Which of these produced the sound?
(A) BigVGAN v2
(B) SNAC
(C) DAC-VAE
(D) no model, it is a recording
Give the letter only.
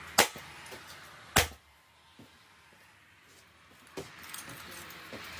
D